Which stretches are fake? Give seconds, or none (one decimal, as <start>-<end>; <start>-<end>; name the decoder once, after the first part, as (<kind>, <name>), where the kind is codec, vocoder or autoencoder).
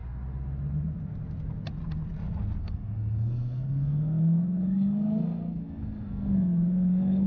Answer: 2.6-7.3 (codec, SNAC)